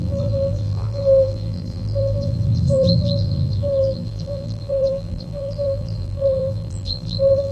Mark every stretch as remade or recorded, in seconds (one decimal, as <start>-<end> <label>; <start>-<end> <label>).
0.0-7.5 remade